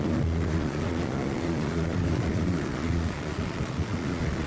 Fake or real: fake